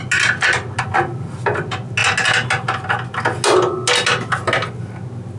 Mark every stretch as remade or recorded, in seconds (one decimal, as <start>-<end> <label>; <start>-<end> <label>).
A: 0.0-5.4 recorded